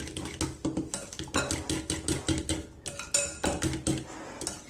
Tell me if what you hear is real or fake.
real